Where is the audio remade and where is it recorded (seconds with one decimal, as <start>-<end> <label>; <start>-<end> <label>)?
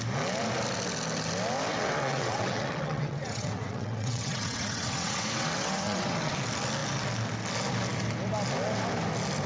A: 0.0-1.7 recorded; 1.7-6.3 remade; 6.3-9.5 recorded